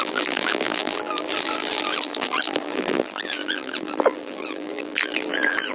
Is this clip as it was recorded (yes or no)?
no